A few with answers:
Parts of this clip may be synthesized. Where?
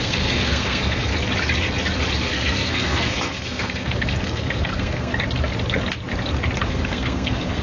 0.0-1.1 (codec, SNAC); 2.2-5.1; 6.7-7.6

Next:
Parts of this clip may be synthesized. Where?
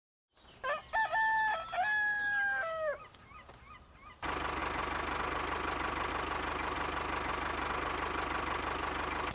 none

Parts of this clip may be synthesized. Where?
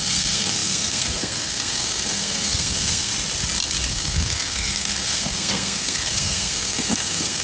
0.0-3.1 (codec, SNAC); 3.9-7.4